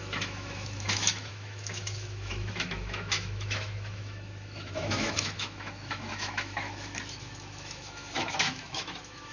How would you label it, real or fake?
fake